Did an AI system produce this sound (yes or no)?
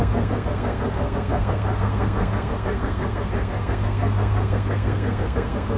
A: yes